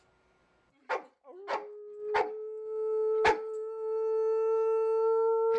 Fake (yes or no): no